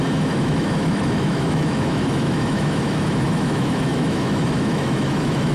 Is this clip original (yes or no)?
no